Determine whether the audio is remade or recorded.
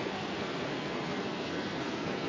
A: remade